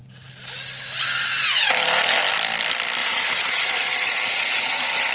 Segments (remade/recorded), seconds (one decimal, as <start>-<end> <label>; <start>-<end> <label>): 0.0-3.0 recorded; 3.0-5.1 remade